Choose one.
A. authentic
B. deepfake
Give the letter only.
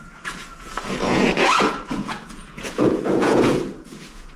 B